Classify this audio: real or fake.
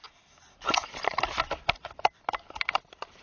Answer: real